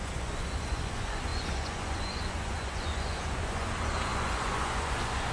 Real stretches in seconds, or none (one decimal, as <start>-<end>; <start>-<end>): none